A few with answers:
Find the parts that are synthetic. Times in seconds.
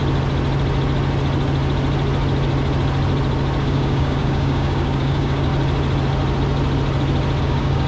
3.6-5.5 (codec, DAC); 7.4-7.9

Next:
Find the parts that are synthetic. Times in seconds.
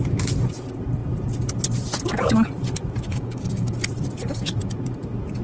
3.1-3.7 (codec, DAC)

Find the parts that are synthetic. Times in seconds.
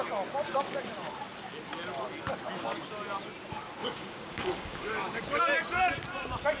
3.8-5.4 (codec, DAC)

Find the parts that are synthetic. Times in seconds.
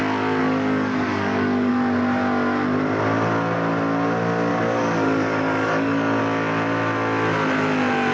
0.4-1.7 (codec, DAC); 4.5-6.2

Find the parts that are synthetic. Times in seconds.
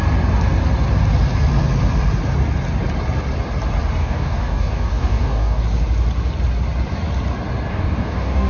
4.0-5.6 (codec, DAC); 7.7-8.5